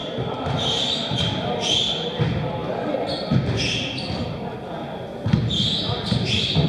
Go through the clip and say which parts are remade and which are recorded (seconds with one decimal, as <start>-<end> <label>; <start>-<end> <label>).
0.0-2.2 remade; 2.2-6.7 recorded